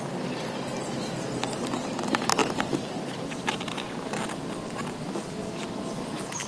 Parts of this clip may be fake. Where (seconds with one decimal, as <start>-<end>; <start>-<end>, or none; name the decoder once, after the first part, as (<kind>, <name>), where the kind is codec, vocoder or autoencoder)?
2.4-3.2 (vocoder, BigVGAN v2)